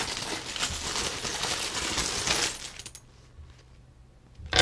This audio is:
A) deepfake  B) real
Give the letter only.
B